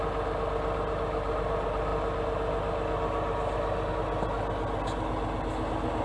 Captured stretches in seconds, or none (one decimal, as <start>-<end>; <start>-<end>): 0.0-6.0